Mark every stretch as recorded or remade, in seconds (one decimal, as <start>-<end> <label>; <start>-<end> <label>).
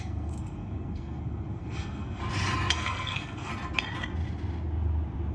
0.0-2.2 remade; 2.2-2.7 recorded; 2.7-3.5 remade; 3.5-5.3 recorded